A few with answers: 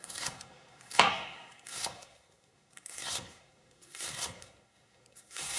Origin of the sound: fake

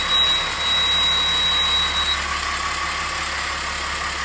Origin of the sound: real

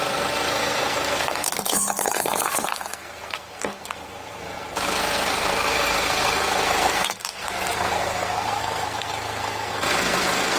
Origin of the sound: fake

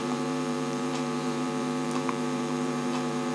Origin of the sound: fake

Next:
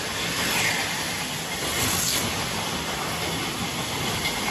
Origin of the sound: real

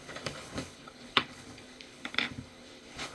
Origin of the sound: fake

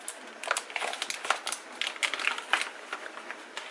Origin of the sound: real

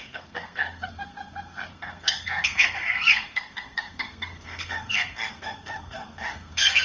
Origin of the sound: fake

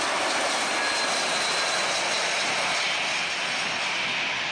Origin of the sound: real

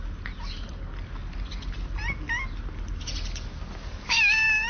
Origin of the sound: real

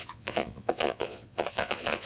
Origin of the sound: fake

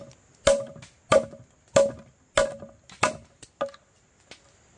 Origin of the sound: real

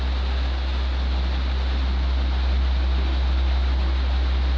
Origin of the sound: real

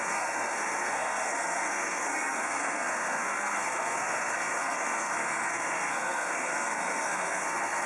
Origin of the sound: fake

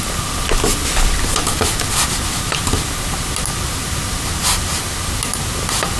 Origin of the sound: real